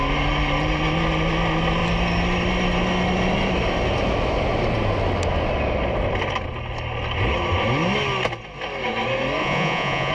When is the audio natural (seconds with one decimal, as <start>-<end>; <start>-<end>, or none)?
0.0-9.4